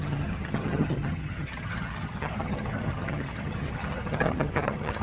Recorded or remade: remade